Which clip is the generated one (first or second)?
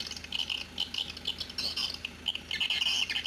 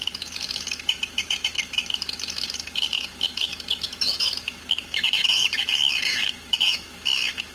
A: second